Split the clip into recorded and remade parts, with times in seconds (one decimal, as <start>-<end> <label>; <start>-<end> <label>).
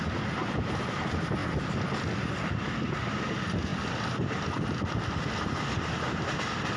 0.0-6.8 recorded